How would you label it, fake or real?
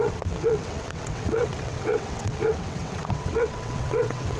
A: fake